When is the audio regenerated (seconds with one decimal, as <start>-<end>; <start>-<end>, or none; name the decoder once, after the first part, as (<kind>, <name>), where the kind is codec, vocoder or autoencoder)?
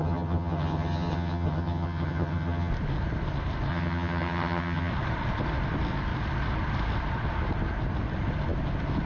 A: 0.0-2.7 (vocoder, HiFi-GAN); 3.7-4.9